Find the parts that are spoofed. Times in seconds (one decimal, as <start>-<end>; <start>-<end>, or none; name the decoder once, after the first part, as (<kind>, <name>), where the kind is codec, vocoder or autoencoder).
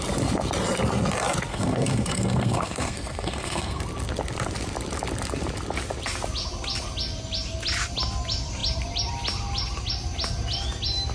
1.5-3.8 (codec, SNAC)